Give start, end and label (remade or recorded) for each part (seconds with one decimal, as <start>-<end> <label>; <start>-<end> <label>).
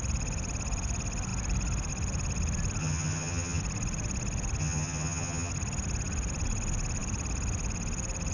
0.0-2.8 recorded; 2.8-3.6 remade; 3.6-4.6 recorded; 4.6-5.5 remade; 5.5-8.3 recorded